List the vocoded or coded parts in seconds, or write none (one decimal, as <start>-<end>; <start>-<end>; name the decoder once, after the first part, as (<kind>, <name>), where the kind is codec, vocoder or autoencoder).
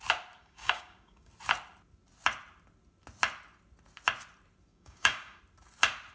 0.4-1.3 (codec, DAC); 4.7-5.4